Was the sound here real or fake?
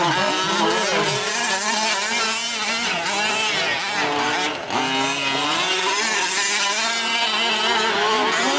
real